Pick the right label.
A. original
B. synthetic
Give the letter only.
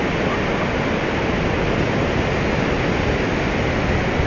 A